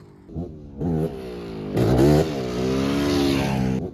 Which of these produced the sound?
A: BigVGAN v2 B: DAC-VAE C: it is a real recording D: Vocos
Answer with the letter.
C